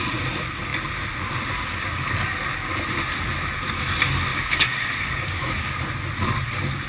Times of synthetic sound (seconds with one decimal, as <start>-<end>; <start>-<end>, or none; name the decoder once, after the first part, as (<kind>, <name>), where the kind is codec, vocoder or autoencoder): 4.3-5.5 (codec, DAC)

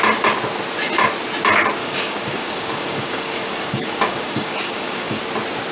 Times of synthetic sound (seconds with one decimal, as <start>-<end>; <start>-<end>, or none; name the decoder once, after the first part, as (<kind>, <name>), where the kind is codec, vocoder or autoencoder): 1.8-5.2 (codec, DAC)

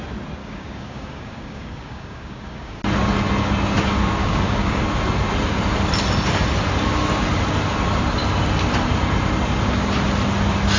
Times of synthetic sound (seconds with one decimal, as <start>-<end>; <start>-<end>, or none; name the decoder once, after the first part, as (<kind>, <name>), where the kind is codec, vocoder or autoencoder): 0.4-2.8 (codec, DAC); 4.2-4.8

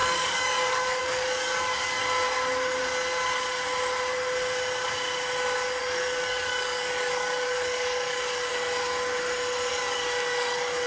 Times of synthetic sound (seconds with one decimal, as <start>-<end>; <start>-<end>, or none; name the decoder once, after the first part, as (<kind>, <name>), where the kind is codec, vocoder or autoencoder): 0.0-2.0 (codec, DAC); 5.8-8.5; 9.7-10.9

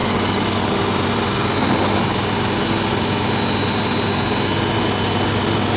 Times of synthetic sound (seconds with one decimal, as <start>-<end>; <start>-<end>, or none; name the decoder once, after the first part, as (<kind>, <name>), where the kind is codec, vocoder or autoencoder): 0.0-0.8 (codec, DAC)

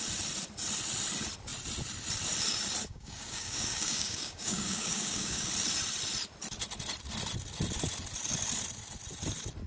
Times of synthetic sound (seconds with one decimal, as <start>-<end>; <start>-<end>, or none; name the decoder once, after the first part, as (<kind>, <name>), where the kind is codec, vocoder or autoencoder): 2.9-5.5 (codec, DAC)

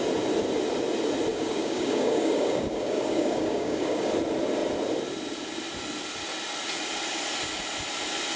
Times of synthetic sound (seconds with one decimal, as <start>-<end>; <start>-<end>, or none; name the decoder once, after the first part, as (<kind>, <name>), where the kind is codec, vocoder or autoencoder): 1.3-4.1 (codec, DAC)